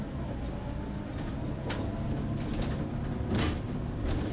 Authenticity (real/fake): real